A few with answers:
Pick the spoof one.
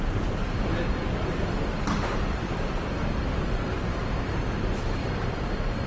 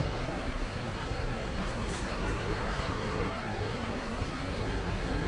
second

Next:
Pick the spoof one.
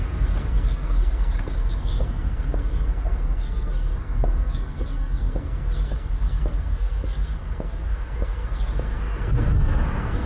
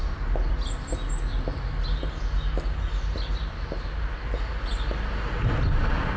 first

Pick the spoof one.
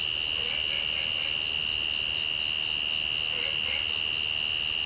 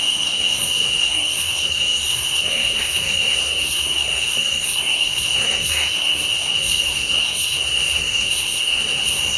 second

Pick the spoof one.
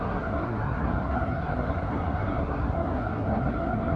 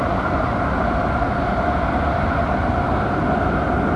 first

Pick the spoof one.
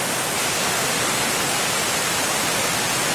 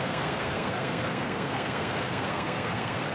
second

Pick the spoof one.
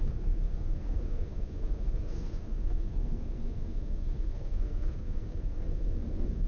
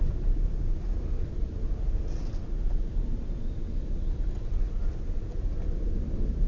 first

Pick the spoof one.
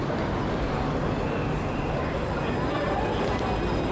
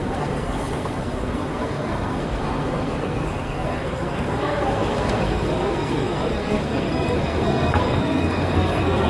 second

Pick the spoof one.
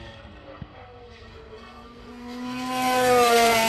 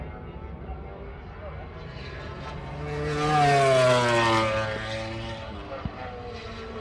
first